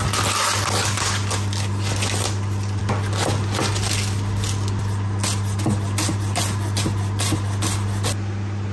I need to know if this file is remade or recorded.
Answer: recorded